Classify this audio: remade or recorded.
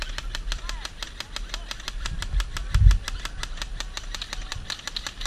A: recorded